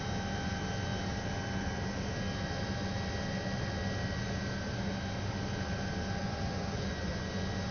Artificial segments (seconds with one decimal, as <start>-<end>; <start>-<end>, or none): 6.2-7.3